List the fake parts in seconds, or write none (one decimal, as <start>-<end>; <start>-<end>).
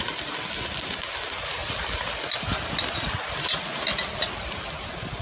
none